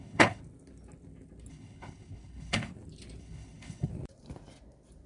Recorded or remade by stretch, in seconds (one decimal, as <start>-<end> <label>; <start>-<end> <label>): 0.0-0.4 remade; 0.4-1.5 recorded; 1.5-2.7 remade; 2.7-3.2 recorded; 3.2-3.9 remade; 3.9-5.1 recorded